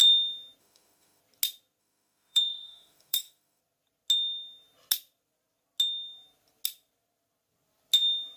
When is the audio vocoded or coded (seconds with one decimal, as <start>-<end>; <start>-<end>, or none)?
0.6-1.2; 1.8-3.6